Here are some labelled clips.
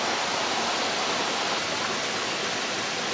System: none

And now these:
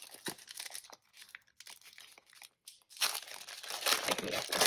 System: none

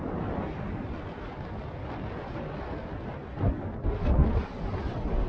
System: none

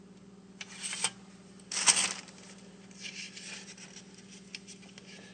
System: none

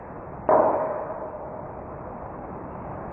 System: none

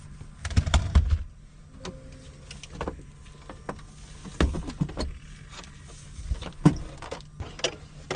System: none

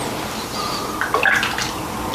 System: none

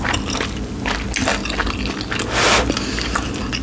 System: none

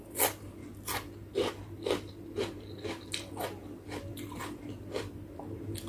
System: none